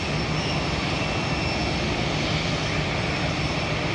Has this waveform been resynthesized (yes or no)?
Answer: no